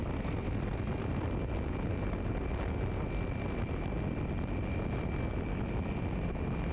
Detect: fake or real real